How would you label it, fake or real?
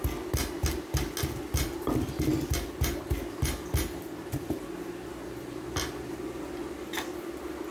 real